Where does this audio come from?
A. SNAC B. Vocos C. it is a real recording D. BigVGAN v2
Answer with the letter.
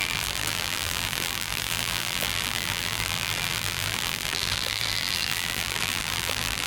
D